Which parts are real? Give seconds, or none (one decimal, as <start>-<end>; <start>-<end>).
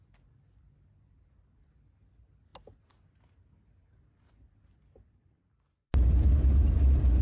0.0-7.2